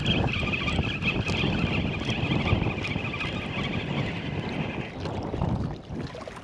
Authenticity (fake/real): real